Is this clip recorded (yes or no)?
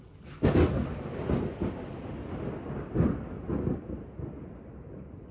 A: yes